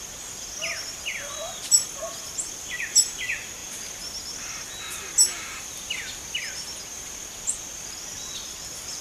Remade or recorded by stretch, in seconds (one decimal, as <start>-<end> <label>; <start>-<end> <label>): 0.0-1.1 recorded; 1.1-3.1 remade; 3.1-9.0 recorded